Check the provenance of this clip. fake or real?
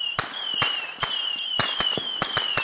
real